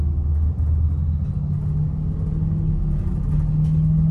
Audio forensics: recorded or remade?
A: recorded